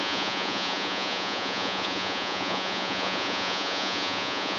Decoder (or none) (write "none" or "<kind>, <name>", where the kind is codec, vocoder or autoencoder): vocoder, Vocos